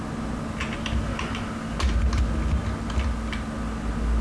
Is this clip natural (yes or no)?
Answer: yes